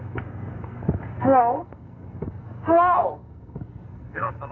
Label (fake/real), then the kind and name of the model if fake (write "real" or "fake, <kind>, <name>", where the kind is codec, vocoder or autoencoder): fake, codec, SNAC